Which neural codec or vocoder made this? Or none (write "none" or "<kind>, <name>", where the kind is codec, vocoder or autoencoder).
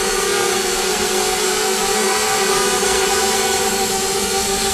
codec, SNAC